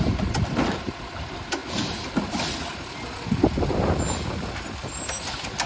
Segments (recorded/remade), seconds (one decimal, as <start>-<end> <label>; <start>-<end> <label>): 0.0-5.7 recorded